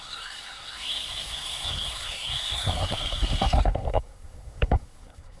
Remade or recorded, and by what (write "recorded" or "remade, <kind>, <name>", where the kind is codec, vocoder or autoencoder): remade, codec, SNAC